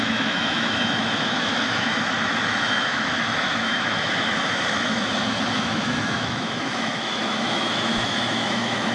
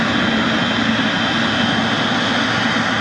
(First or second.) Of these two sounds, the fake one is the first